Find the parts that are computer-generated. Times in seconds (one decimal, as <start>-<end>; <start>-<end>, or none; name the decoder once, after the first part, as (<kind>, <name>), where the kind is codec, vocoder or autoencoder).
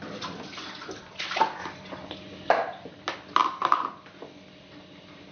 none